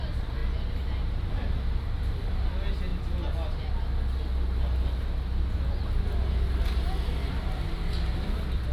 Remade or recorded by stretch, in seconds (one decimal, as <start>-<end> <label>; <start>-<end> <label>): 0.0-0.4 remade; 0.4-2.1 recorded; 2.1-2.9 remade; 2.9-7.3 recorded; 7.3-8.7 remade